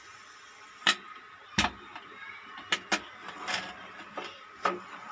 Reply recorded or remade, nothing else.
recorded